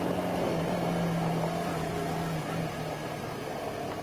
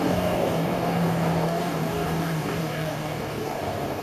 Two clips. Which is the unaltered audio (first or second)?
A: first